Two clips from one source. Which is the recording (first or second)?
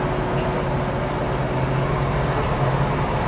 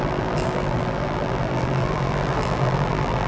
first